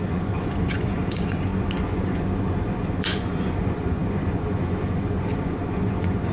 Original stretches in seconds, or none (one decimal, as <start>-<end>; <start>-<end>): none